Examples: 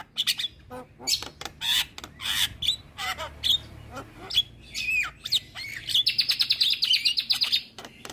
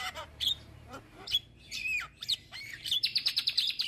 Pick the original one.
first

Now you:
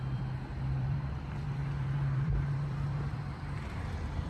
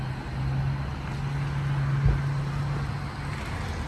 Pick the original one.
second